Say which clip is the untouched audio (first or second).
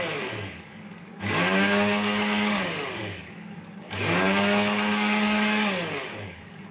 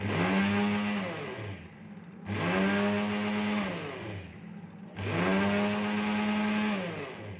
second